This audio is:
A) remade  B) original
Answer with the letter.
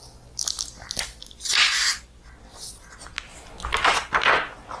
B